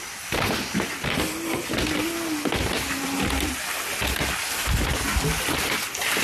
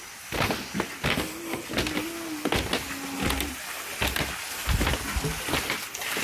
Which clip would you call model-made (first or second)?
first